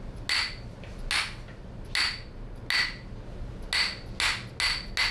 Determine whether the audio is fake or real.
real